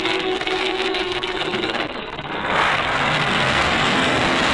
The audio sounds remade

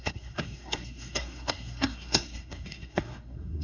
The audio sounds remade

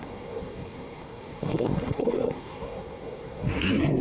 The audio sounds remade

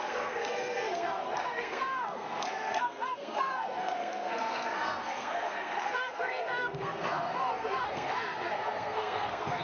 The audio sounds remade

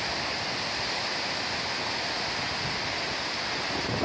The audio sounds recorded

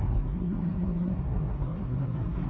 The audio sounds remade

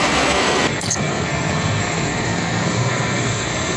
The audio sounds remade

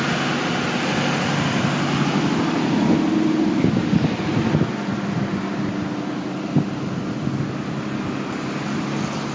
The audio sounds recorded